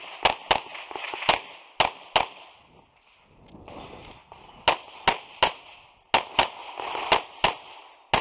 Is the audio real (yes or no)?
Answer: yes